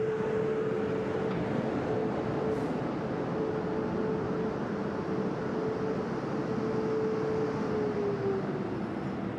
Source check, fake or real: real